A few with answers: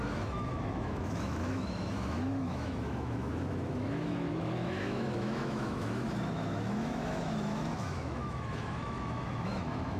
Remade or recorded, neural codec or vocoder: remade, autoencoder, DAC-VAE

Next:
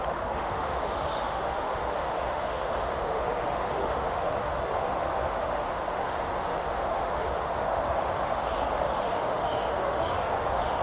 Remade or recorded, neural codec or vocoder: remade, autoencoder, DAC-VAE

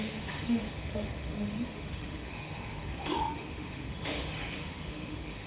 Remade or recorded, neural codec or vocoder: remade, autoencoder, DAC-VAE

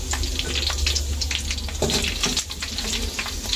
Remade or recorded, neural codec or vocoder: recorded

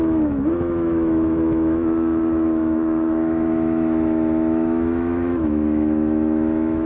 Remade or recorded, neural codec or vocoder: remade, autoencoder, DAC-VAE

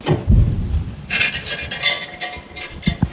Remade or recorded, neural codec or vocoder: recorded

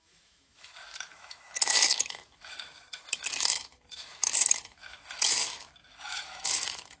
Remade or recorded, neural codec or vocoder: remade, autoencoder, DAC-VAE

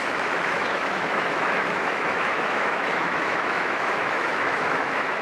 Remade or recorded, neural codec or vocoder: remade, autoencoder, DAC-VAE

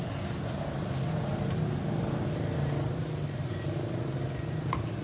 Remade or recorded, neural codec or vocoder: recorded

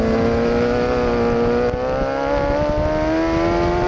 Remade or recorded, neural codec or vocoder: recorded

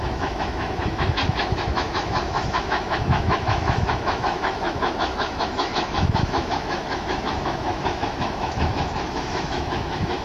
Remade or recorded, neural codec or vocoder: remade, autoencoder, DAC-VAE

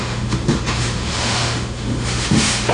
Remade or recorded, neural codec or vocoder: remade, autoencoder, DAC-VAE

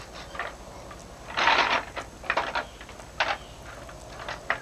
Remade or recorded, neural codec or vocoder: recorded